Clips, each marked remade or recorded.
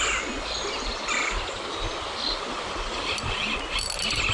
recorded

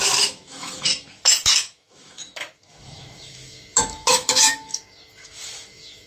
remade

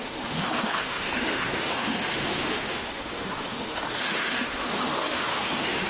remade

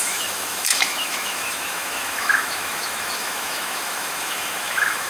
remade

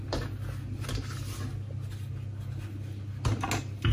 recorded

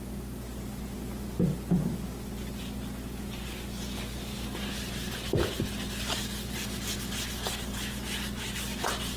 recorded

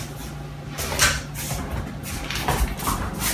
recorded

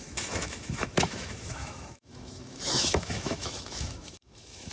remade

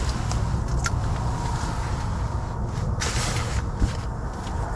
recorded